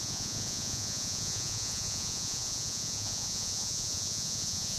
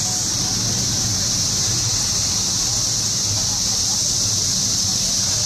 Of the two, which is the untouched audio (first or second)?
second